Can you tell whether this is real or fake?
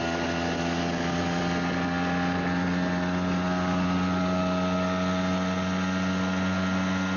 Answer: real